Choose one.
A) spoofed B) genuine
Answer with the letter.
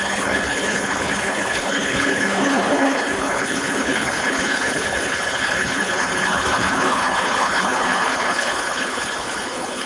A